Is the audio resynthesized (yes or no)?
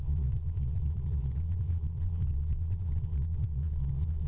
yes